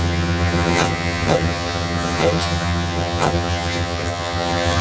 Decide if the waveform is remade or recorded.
remade